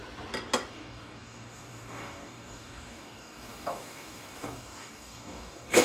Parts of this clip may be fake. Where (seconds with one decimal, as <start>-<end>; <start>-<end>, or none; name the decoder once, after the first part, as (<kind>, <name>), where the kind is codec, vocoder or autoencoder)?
0.7-5.8 (codec, DAC)